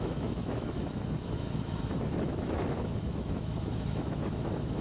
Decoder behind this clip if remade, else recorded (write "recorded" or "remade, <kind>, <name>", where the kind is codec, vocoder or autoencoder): remade, autoencoder, DAC-VAE